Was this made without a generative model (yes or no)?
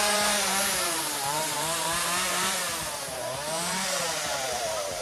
no